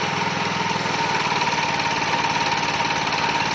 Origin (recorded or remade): recorded